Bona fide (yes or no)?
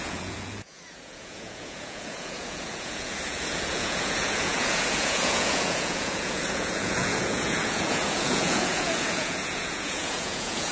no